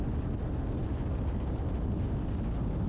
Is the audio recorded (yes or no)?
yes